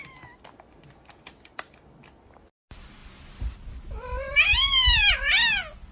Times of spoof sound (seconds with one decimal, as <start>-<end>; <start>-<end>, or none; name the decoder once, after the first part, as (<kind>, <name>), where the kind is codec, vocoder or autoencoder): none